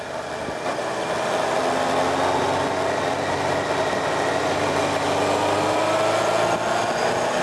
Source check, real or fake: real